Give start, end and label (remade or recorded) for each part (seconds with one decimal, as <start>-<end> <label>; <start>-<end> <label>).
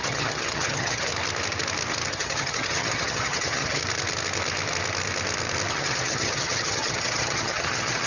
0.0-1.1 remade; 1.1-2.1 recorded; 2.1-3.8 remade; 3.8-5.7 recorded; 5.7-8.1 remade